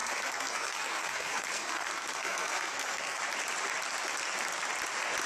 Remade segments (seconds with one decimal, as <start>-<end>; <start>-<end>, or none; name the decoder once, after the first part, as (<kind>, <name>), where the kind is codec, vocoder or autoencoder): 0.0-3.2 (codec, SNAC)